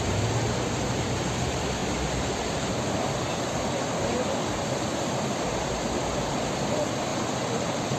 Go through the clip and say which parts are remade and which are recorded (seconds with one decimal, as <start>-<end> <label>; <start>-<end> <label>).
0.0-1.8 recorded; 1.8-2.8 remade; 2.8-7.1 recorded; 7.1-8.0 remade